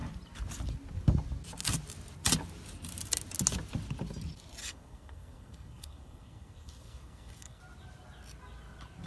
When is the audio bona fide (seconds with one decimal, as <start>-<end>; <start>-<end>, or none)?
0.0-4.6; 7.6-9.1